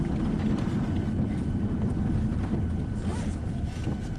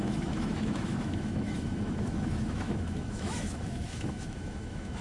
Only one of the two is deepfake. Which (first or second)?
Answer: second